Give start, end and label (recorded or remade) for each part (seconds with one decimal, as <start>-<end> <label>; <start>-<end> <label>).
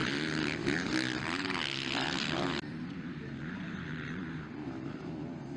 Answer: 0.0-2.6 recorded; 2.6-5.6 remade